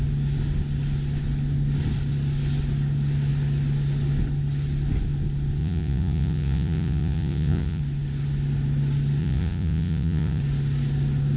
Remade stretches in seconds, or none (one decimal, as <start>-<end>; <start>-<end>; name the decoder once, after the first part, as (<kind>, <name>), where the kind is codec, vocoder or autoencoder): 5.6-7.8 (vocoder, Vocos); 9.2-10.4